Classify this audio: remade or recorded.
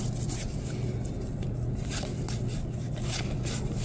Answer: recorded